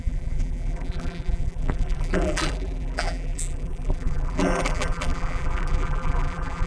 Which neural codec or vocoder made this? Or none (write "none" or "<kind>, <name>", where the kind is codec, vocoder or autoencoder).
vocoder, BigVGAN v2